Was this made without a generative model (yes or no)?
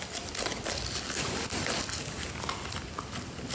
yes